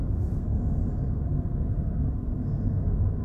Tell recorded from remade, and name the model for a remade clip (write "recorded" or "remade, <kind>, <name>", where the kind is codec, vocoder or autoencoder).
remade, codec, SNAC